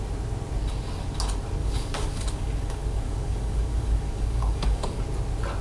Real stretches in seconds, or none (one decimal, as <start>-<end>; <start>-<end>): 0.0-1.6; 5.0-5.6